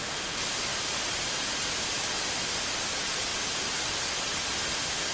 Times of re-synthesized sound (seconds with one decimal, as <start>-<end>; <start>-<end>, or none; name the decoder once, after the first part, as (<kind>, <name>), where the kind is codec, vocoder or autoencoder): 3.3-3.9 (vocoder, BigVGAN v2)